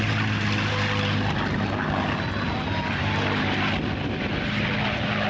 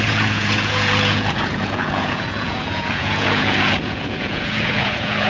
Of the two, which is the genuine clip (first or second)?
first